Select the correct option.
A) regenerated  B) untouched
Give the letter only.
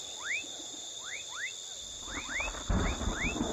B